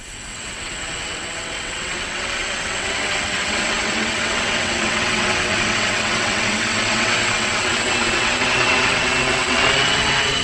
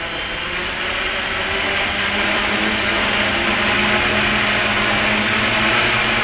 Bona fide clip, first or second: second